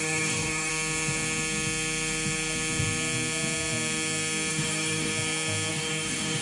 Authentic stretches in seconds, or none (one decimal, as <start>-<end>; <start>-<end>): 0.7-4.5; 5.1-5.7